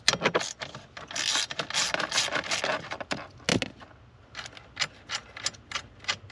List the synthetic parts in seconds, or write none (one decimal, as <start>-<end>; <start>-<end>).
none